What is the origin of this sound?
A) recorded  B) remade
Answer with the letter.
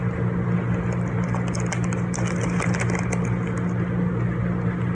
A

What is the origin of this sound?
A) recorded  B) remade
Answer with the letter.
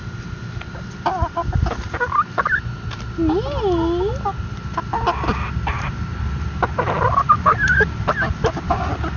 A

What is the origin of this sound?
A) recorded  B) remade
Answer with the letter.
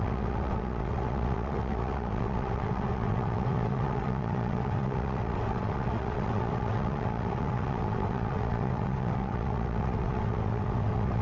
B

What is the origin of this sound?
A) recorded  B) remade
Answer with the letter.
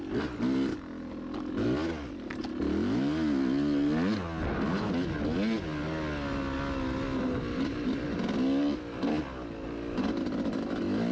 A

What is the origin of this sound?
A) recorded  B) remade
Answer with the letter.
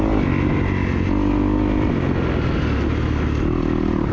A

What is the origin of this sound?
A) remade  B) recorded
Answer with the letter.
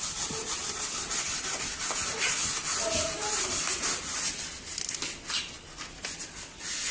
B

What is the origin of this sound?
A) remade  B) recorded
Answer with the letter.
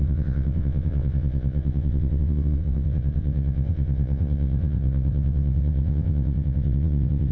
A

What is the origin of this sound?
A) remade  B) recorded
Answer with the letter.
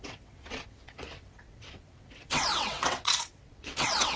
A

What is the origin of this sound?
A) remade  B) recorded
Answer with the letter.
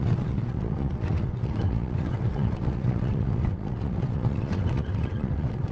A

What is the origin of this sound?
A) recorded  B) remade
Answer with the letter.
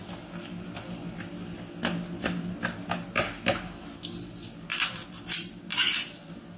A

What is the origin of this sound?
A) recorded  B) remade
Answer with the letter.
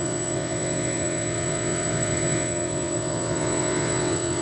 B